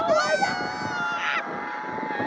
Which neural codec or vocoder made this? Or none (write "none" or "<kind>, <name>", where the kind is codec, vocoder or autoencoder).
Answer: none